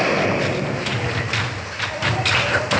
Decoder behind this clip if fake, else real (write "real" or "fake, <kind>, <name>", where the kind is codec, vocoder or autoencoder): real